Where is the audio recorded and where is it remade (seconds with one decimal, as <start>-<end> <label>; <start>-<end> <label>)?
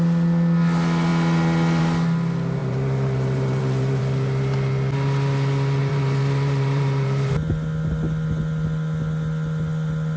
0.0-2.6 recorded; 2.6-4.0 remade; 4.0-5.8 recorded; 5.8-7.3 remade; 7.3-10.2 recorded